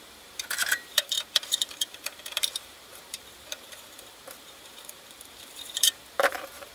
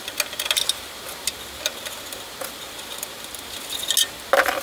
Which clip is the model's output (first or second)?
first